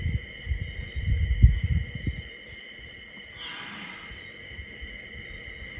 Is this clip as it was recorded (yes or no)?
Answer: yes